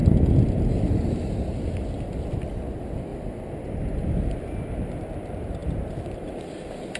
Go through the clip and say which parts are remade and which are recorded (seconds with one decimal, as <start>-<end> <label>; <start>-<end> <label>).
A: 0.0-7.0 recorded